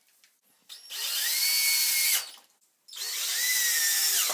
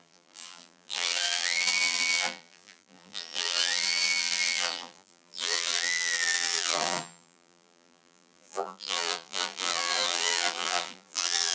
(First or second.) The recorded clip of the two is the first